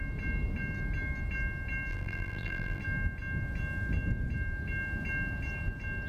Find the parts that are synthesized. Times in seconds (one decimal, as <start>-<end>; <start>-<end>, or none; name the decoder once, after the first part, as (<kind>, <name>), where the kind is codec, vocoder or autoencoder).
1.9-2.8 (vocoder, BigVGAN v2)

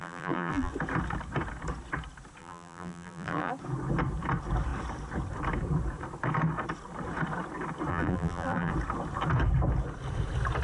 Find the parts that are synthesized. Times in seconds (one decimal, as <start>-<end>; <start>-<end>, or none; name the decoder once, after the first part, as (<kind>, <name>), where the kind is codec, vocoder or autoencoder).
0.0-0.7 (vocoder, BigVGAN v2); 2.4-3.5; 7.9-8.7

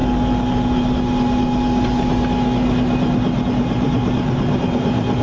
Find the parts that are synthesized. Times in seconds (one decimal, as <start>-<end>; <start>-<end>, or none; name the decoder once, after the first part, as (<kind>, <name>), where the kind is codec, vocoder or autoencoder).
none

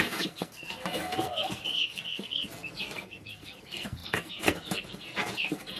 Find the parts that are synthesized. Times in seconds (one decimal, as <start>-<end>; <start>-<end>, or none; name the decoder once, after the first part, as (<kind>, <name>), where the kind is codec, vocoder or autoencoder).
0.0-5.8 (codec, SNAC)